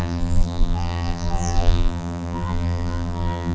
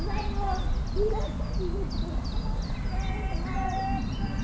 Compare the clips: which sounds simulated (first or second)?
first